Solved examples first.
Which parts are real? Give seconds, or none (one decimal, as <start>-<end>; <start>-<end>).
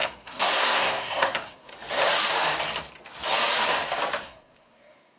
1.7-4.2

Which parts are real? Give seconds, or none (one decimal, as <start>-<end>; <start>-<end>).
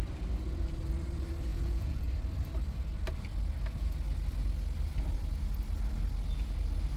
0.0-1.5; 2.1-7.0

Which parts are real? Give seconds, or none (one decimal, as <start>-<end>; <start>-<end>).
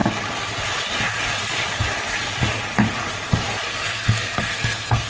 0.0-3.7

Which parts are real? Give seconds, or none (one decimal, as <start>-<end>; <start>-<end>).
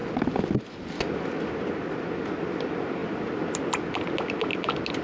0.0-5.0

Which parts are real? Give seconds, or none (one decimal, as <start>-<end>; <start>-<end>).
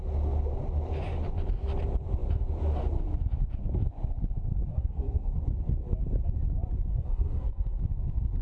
0.0-4.7; 5.3-6.9; 7.8-8.4